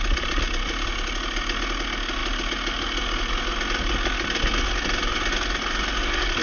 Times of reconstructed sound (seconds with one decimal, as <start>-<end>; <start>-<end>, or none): none